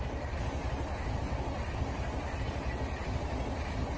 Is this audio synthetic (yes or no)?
no